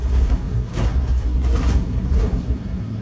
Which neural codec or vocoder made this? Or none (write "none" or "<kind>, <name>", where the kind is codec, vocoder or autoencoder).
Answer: codec, SNAC